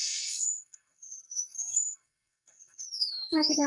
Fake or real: fake